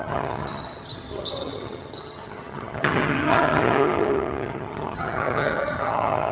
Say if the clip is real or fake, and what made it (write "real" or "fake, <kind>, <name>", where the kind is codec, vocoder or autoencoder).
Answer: fake, vocoder, HiFi-GAN